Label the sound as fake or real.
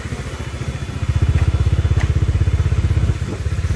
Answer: real